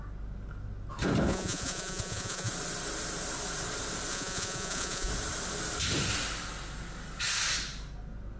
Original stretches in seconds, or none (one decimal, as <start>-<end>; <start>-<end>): 0.0-1.3; 2.5-4.1; 5.1-8.4